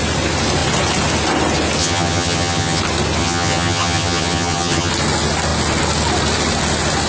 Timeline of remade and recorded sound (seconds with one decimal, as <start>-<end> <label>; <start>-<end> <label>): 0.0-1.8 recorded; 1.8-2.8 remade; 2.8-3.2 recorded; 3.2-4.9 remade; 4.9-7.1 recorded